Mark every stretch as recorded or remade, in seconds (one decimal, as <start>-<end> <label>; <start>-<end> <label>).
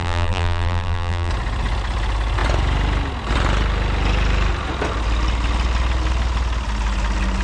0.0-1.3 remade; 1.3-7.4 recorded